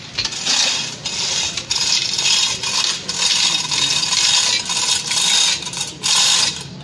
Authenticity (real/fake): real